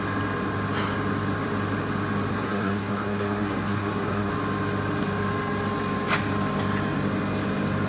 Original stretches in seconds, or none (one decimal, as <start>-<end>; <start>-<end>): 0.0-2.3; 4.3-7.9